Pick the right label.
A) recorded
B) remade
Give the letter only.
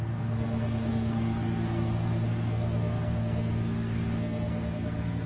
B